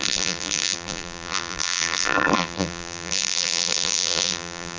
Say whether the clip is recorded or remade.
remade